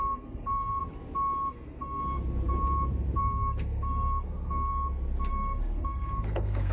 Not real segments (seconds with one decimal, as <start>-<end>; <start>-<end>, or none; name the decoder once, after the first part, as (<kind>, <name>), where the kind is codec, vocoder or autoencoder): 0.0-0.8 (codec, SNAC); 1.5-2.0; 3.2-4.7; 5.3-6.7